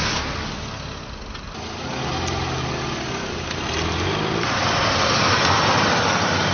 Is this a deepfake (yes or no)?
no